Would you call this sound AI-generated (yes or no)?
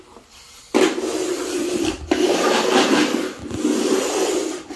no